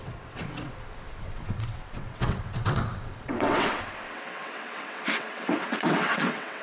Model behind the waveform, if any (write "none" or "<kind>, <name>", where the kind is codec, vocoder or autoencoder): vocoder, WaveNeXt